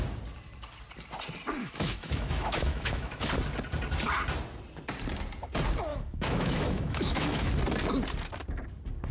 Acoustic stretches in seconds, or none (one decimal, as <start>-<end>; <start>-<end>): 0.0-1.6; 3.3-5.9; 7.5-9.1